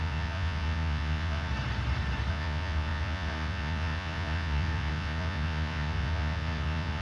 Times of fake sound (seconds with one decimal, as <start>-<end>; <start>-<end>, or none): 0.0-1.5; 2.3-7.0